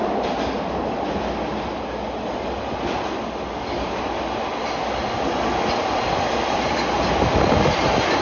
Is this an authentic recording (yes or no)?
yes